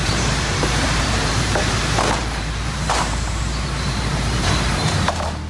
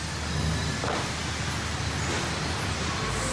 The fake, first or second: first